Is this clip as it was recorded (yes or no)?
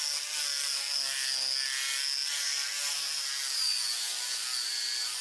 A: yes